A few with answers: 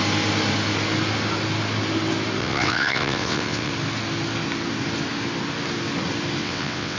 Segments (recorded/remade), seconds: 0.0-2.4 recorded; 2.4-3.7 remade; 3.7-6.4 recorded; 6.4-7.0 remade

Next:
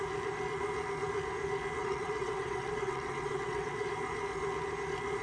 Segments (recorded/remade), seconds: 0.0-1.8 recorded; 1.8-3.9 remade; 3.9-5.2 recorded

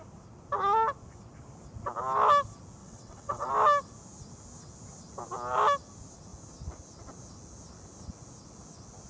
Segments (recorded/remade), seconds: 0.0-2.8 recorded; 2.8-3.5 remade; 3.5-9.1 recorded

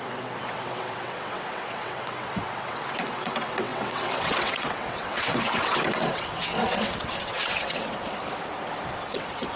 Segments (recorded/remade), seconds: 0.0-8.2 remade; 8.2-9.1 recorded; 9.1-9.6 remade

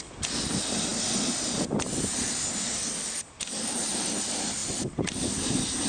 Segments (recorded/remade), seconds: 0.0-5.9 recorded

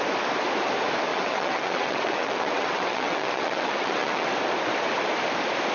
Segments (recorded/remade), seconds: 0.0-1.1 recorded; 1.1-4.3 remade; 4.3-5.7 recorded

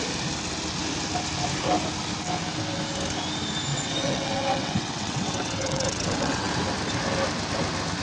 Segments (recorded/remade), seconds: 0.0-3.7 recorded; 3.7-6.5 remade; 6.5-8.0 recorded